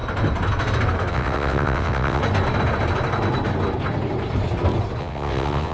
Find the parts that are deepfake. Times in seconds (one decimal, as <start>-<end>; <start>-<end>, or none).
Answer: 1.1-2.2; 5.0-5.7

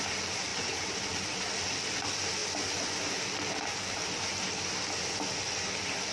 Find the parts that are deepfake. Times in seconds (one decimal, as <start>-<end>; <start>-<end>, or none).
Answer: none

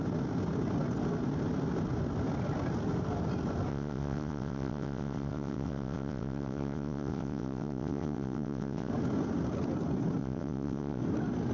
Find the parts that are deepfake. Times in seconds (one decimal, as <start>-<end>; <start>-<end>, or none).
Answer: 3.7-8.9; 10.2-11.0

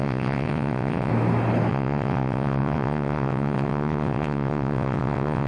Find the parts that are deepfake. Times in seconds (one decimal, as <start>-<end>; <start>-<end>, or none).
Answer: 0.0-1.1; 1.7-5.5

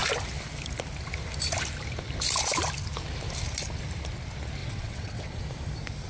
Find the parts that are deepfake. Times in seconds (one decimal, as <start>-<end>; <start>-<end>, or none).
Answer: 4.6-5.4

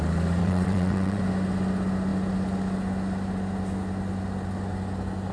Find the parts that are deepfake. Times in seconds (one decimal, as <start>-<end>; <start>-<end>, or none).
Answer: 0.4-1.2